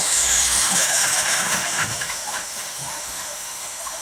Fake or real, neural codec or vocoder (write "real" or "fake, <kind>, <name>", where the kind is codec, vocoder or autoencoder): fake, autoencoder, DAC-VAE